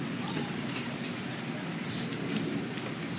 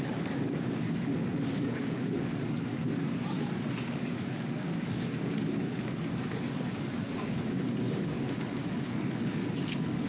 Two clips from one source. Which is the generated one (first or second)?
second